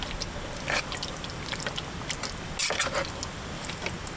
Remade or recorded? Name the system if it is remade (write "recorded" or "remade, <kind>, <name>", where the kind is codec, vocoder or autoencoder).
recorded